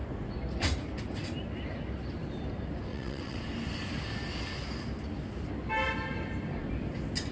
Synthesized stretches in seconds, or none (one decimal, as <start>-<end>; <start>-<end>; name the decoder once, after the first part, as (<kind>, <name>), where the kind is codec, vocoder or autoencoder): 2.9-3.4 (vocoder, WaveNeXt)